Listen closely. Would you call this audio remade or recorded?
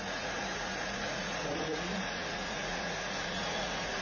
remade